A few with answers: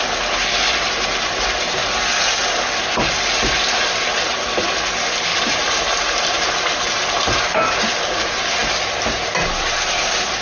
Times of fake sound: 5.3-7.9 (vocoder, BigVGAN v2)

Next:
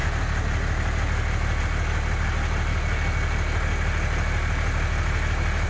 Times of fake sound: none

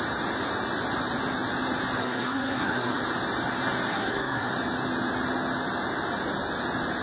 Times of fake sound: 2.0-3.0 (codec, SNAC); 3.9-4.5

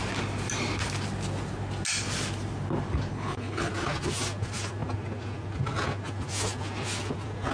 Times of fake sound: 3.1-3.7 (codec, HILCodec)